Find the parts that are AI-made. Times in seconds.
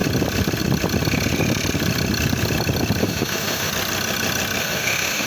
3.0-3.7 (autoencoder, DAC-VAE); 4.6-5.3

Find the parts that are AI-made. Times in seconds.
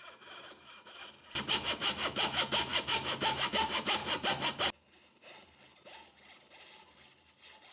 0.0-1.0 (autoencoder, DAC-VAE); 1.5-4.0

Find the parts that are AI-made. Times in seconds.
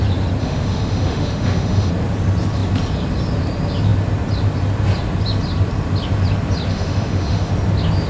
0.4-1.9 (autoencoder, DAC-VAE); 6.7-7.5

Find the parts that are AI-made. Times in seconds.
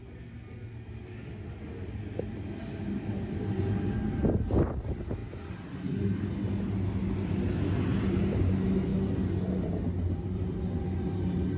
none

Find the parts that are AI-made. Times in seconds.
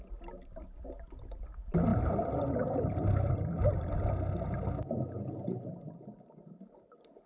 none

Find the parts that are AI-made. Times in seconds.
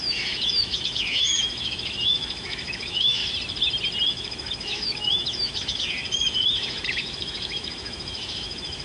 0.0-3.2 (autoencoder, DAC-VAE); 4.1-8.8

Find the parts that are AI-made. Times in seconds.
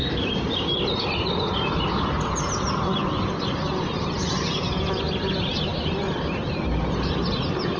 none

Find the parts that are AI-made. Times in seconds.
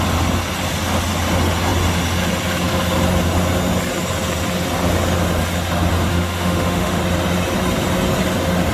6.1-7.0 (autoencoder, DAC-VAE)